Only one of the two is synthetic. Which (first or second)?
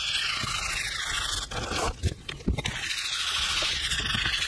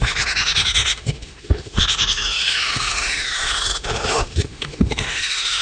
second